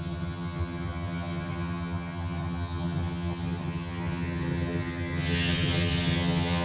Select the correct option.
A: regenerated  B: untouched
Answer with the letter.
A